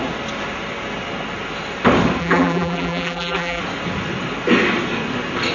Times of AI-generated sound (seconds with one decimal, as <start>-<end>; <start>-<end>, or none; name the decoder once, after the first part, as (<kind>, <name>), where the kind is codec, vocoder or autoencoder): 2.2-3.6 (vocoder, BigVGAN v2)